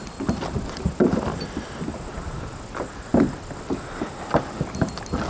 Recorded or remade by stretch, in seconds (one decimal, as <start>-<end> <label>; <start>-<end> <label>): 0.0-5.3 recorded